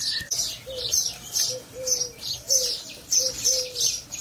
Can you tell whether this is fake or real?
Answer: fake